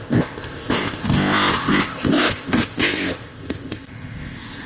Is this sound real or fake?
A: fake